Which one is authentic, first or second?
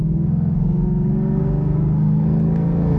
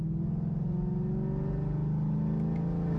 second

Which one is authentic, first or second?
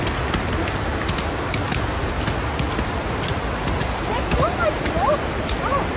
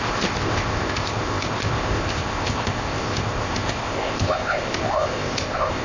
first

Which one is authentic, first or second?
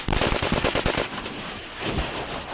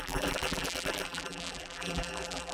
first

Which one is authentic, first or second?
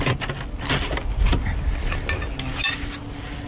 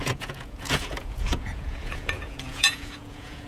first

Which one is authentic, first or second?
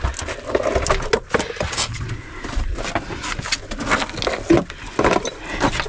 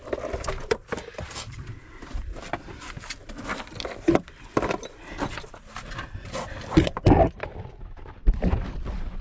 first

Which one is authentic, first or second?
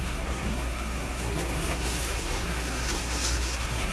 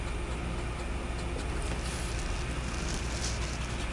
second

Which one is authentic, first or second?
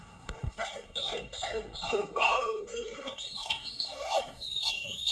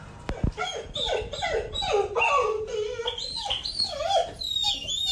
second